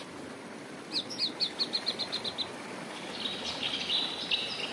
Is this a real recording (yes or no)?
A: yes